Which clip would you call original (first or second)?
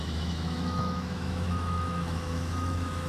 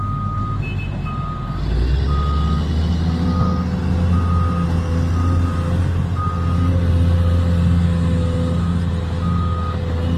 second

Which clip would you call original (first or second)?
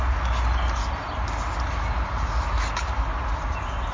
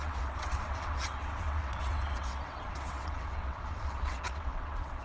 first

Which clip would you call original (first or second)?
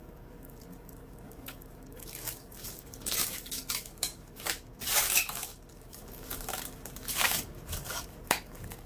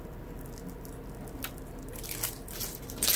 second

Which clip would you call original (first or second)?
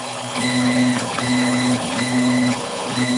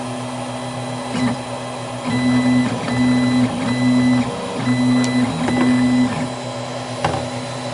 second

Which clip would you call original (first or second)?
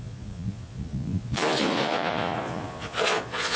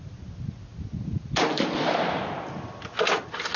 second